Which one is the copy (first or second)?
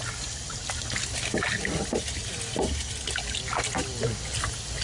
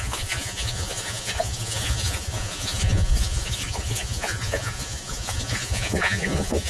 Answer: second